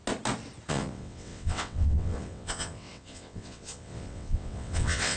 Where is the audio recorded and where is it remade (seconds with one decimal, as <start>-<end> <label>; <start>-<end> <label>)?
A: 0.0-0.7 recorded; 0.7-5.2 remade